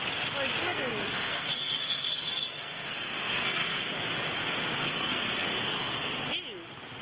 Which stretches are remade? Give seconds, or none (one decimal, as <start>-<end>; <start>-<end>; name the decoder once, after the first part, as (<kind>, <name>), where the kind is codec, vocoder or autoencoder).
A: 0.6-3.9 (codec, SNAC); 4.8-6.1